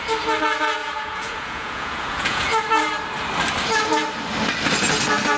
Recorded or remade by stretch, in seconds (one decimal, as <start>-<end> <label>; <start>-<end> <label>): 0.0-0.8 recorded; 0.8-2.4 remade; 2.4-5.4 recorded